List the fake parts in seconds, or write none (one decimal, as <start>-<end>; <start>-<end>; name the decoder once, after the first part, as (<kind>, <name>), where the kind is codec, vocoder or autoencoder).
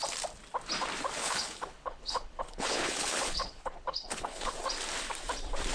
1.2-4.5 (codec, HILCodec)